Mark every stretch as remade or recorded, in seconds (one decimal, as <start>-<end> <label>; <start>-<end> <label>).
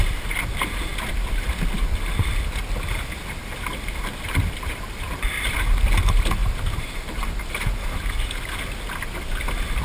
0.0-6.4 recorded; 6.4-8.3 remade; 8.3-9.8 recorded